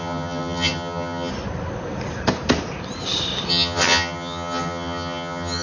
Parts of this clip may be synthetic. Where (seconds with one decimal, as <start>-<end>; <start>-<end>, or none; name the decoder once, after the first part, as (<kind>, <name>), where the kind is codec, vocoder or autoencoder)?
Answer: 0.0-1.3 (vocoder, HiFi-GAN); 3.5-5.6